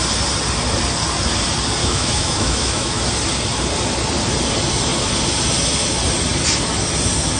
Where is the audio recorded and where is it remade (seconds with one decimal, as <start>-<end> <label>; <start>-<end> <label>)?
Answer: 0.0-1.8 recorded; 1.8-3.0 remade; 3.0-7.4 recorded